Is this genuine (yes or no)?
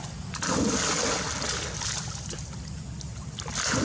yes